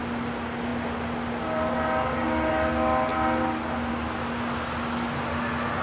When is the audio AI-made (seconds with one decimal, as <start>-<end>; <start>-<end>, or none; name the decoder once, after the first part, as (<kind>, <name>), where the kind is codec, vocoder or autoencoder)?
none